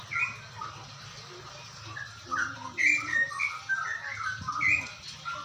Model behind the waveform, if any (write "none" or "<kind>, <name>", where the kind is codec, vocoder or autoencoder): none